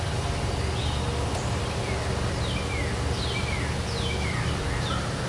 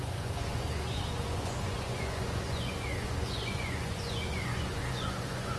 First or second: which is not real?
second